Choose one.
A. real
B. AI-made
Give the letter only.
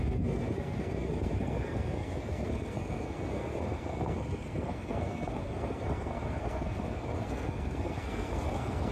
B